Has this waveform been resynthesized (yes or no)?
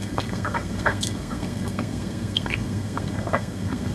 yes